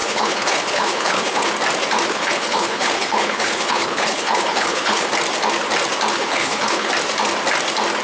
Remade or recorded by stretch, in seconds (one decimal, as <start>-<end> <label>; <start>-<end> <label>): 0.0-1.5 remade; 1.5-2.1 recorded; 2.1-5.1 remade; 5.1-6.1 recorded; 6.1-6.9 remade; 6.9-8.0 recorded